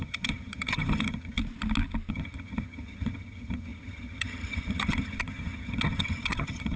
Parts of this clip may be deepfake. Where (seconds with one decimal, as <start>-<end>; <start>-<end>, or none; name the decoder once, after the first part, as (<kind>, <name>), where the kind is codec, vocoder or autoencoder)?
0.0-1.4 (vocoder, HiFi-GAN); 2.1-6.8